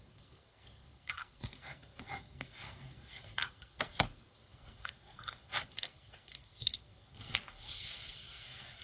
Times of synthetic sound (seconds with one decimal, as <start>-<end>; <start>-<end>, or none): 0.0-8.8